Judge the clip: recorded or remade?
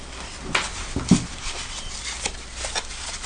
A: remade